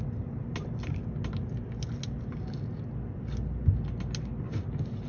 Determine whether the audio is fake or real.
real